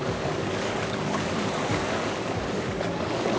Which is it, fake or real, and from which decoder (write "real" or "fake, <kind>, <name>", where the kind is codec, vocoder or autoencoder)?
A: fake, codec, DAC